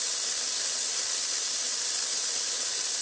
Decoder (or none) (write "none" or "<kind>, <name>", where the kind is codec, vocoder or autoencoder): none